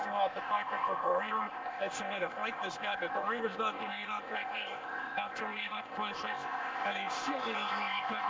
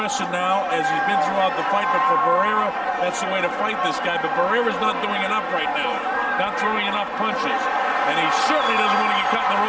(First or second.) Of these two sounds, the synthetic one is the first